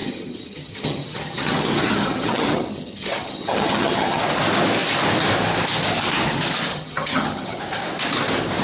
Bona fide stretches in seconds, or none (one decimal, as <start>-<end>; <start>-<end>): 4.2-6.7; 7.6-8.6